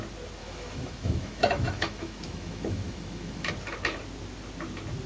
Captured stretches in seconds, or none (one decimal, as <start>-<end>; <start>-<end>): 0.0-0.4; 3.5-5.1